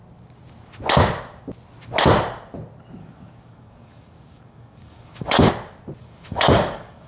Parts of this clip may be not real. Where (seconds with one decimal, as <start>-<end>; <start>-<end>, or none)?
3.0-5.5; 6.0-7.1